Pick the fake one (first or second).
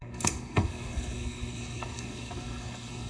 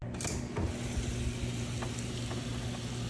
first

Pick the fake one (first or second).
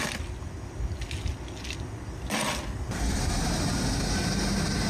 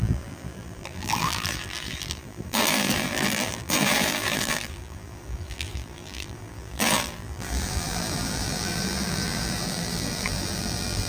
second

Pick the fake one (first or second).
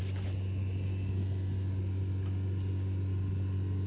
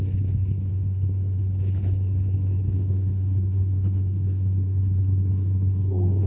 second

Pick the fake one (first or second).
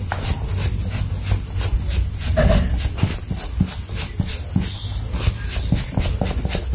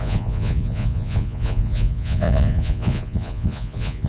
second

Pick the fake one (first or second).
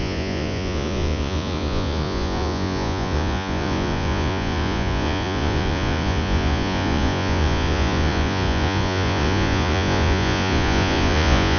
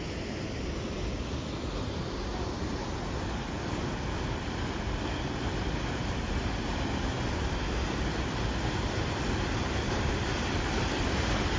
first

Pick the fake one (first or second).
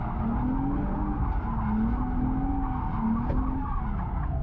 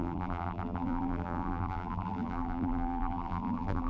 second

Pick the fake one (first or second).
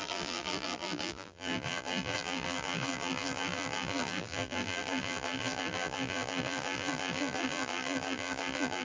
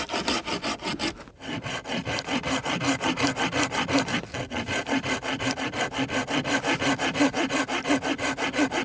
first